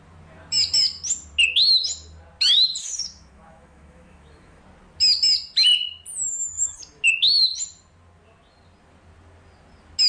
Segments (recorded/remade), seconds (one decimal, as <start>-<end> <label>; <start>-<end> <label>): 0.0-2.8 recorded; 2.8-4.6 remade; 4.6-6.2 recorded; 6.2-6.8 remade; 6.8-10.1 recorded